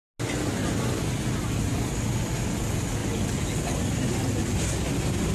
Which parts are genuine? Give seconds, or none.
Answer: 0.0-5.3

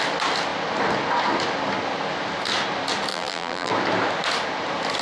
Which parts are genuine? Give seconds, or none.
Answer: 0.0-3.1; 3.7-5.0

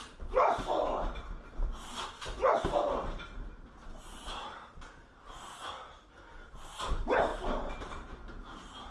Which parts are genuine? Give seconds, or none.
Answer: 7.3-7.9